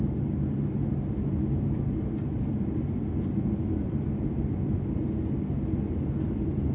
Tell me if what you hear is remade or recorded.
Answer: recorded